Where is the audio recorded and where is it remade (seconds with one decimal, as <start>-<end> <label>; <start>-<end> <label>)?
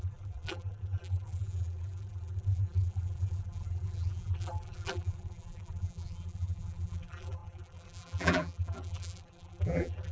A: 0.0-10.1 remade